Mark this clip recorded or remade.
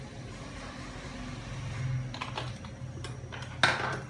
recorded